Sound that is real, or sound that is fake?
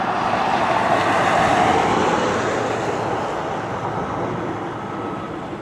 real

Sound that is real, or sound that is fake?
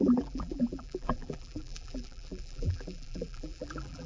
fake